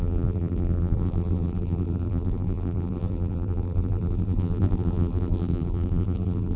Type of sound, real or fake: fake